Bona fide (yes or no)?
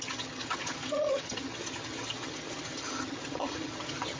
no